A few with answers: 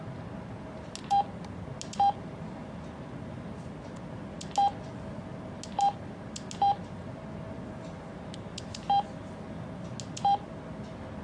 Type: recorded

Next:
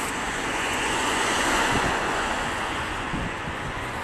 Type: remade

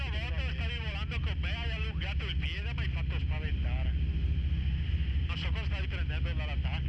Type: recorded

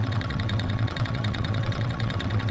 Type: remade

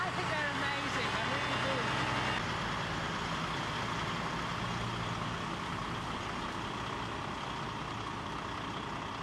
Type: recorded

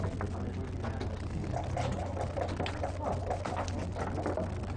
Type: recorded